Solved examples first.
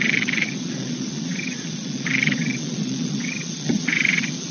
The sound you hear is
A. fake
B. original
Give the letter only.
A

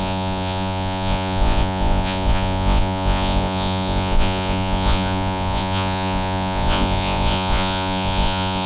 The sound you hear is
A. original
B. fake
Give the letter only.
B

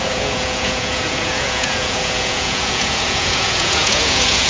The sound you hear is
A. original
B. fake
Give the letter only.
B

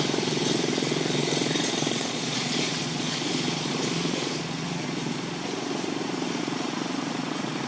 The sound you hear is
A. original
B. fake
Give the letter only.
B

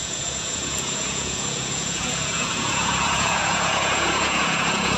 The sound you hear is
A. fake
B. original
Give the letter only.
A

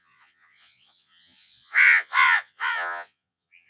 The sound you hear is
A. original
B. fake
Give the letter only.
B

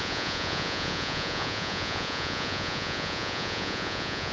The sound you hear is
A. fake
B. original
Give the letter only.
A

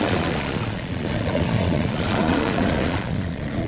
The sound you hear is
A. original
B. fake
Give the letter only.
B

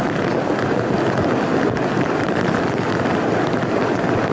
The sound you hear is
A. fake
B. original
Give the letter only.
B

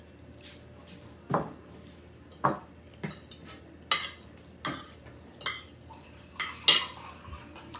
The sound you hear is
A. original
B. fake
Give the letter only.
A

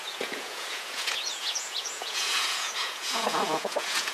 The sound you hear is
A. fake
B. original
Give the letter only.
A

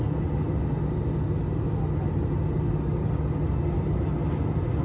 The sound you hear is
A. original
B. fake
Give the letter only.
A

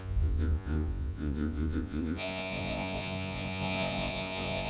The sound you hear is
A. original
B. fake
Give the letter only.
B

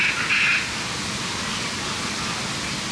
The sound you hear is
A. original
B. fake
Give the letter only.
A